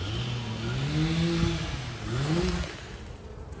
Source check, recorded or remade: recorded